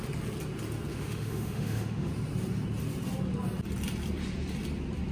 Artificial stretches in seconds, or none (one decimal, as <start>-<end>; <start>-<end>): 0.9-2.1